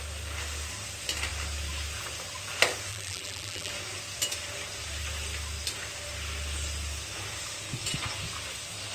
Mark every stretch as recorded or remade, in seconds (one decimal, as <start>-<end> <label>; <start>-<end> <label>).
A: 0.0-2.9 recorded; 2.9-3.7 remade; 3.7-8.9 recorded